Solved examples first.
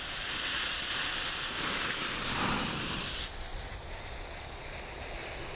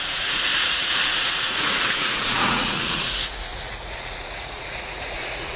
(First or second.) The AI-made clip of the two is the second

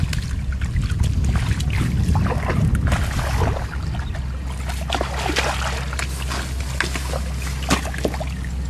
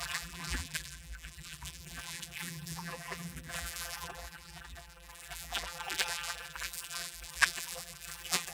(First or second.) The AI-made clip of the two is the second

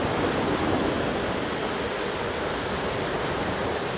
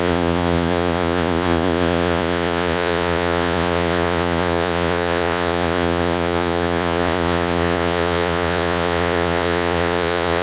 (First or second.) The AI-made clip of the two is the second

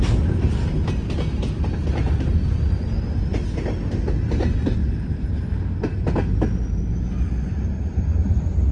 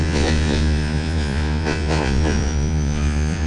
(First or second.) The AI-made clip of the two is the second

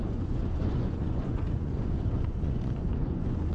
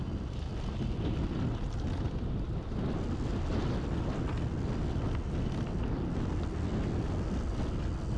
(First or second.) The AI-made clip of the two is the first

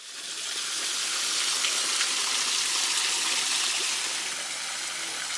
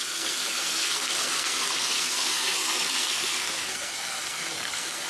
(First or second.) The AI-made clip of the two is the second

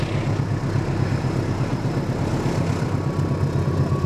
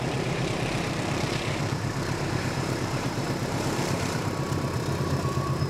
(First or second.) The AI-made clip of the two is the second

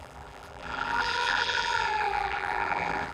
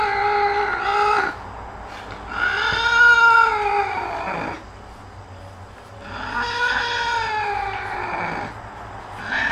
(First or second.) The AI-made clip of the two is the first